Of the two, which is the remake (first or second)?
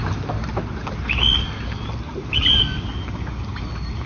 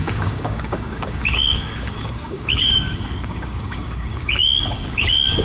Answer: second